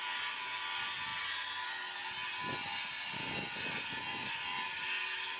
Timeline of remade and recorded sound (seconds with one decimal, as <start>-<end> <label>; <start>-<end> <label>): 0.0-5.4 recorded

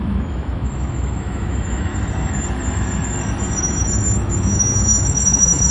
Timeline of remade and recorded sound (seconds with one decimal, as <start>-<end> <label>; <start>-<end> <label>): 0.0-1.9 remade; 1.9-3.8 recorded; 3.8-5.7 remade

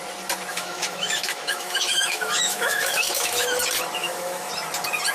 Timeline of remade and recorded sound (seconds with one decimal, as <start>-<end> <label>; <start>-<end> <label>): 0.0-0.5 recorded; 0.5-3.6 remade; 3.6-4.0 recorded; 4.0-4.5 remade; 4.5-5.1 recorded

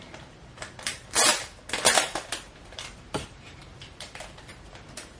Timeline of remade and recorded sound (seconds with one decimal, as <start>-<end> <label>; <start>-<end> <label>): 0.0-1.3 remade; 1.3-1.9 recorded; 1.9-5.2 remade